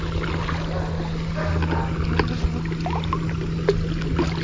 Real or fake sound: real